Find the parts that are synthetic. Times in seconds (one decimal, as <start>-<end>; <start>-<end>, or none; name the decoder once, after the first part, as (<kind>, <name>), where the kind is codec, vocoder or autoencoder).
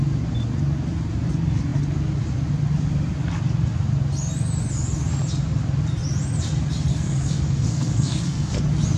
6.9-8.6 (codec, SNAC)